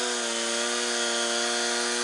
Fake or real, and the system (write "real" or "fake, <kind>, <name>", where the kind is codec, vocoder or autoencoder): real